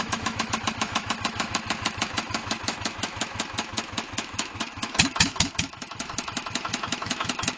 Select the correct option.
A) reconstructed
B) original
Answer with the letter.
A